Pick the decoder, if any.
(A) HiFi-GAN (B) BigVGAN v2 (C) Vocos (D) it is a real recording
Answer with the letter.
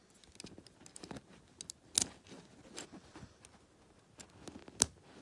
D